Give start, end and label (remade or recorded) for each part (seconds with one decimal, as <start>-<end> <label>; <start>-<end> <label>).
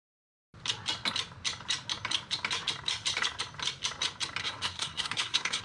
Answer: 0.0-4.4 recorded; 4.4-5.6 remade